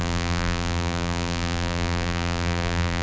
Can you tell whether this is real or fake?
fake